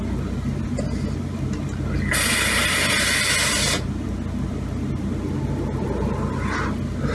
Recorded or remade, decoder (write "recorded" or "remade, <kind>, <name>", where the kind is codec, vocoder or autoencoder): recorded